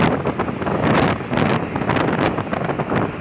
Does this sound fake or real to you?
real